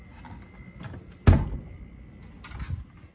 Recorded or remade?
recorded